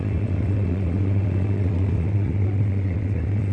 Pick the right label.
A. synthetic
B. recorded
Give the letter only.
A